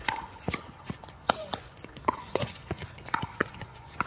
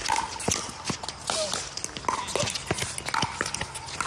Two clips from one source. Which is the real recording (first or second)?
second